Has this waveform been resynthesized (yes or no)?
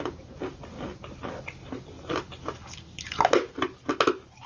no